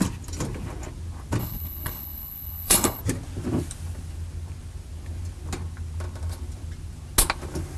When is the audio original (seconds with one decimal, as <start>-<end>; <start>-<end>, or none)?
0.0-1.4; 3.0-7.8